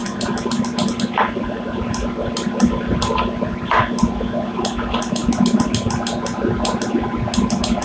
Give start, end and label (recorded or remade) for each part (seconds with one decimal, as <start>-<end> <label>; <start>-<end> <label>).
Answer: 0.0-7.8 recorded

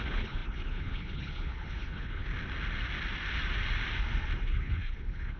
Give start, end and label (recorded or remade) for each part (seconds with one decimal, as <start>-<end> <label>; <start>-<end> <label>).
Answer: 0.0-2.3 remade; 2.3-4.5 recorded; 4.5-5.4 remade

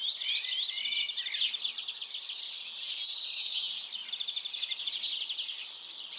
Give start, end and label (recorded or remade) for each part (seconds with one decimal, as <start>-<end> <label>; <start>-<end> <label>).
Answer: 0.0-6.2 recorded